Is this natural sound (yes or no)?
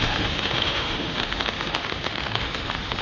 no